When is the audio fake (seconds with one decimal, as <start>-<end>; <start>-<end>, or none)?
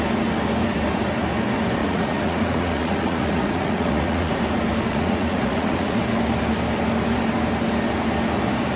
1.8-4.3; 4.9-6.0